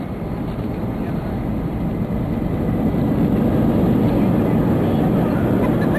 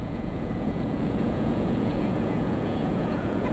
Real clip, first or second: first